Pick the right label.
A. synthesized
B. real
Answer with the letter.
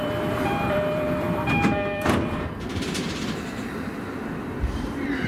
A